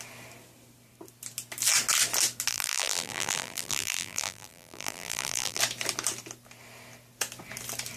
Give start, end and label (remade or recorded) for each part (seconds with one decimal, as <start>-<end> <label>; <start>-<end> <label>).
0.0-2.5 recorded; 2.5-5.6 remade; 5.6-8.0 recorded